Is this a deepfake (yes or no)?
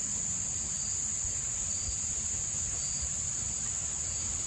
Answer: no